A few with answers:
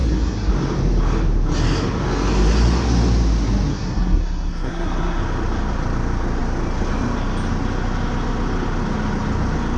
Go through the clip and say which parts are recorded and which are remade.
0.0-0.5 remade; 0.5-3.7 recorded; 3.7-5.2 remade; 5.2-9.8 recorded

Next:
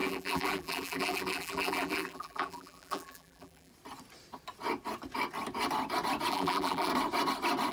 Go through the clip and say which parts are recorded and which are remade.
0.0-3.7 remade; 3.7-6.3 recorded; 6.3-6.9 remade; 6.9-7.7 recorded

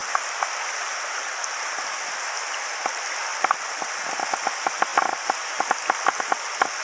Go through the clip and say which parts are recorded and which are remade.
0.0-6.8 recorded

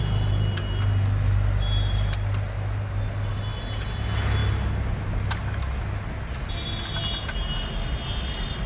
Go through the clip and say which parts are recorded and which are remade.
0.0-8.7 recorded

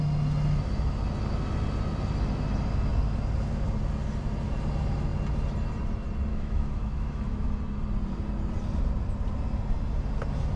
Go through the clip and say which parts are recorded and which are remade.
0.0-6.3 recorded; 6.3-7.5 remade; 7.5-10.6 recorded

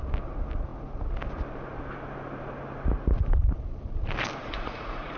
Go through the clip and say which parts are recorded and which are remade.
0.0-4.4 recorded; 4.4-5.2 remade

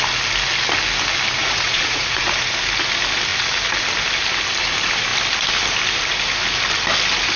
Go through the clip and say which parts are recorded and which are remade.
0.0-1.4 recorded; 1.4-2.2 remade; 2.2-7.4 recorded

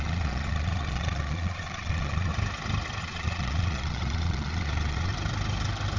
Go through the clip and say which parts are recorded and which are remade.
0.0-2.3 remade; 2.3-3.0 recorded; 3.0-5.1 remade; 5.1-6.0 recorded